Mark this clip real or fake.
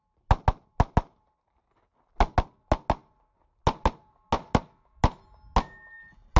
real